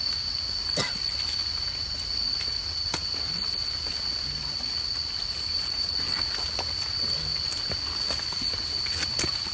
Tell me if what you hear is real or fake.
real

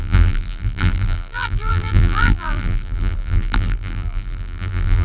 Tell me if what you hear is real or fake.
fake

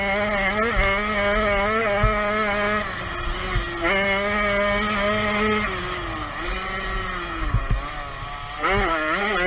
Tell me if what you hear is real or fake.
real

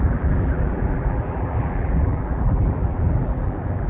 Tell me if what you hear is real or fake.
fake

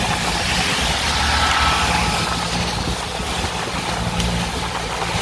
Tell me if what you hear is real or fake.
real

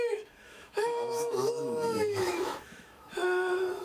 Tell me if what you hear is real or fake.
fake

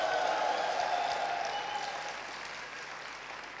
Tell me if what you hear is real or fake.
real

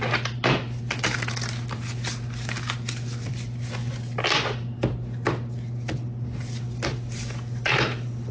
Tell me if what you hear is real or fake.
real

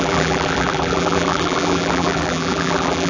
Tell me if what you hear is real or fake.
fake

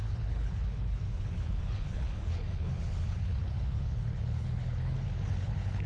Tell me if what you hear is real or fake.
fake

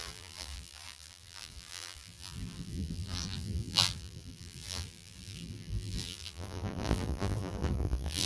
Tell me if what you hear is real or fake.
fake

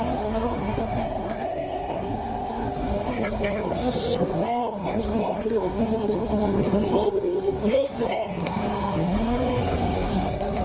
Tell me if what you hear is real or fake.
fake